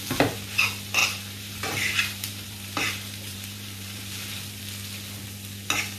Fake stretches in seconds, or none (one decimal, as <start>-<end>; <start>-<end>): 1.0-4.6